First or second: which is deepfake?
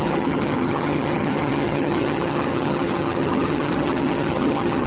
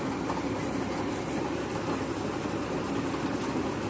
first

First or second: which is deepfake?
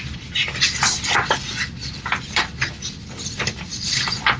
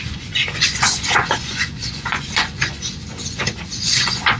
second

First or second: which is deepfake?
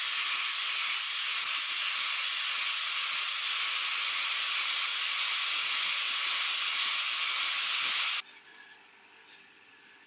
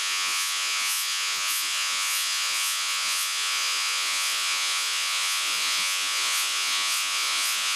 second